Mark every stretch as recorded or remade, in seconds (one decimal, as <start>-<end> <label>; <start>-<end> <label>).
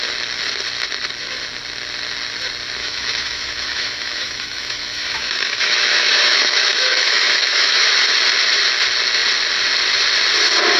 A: 0.0-2.8 recorded; 2.8-7.9 remade; 7.9-10.8 recorded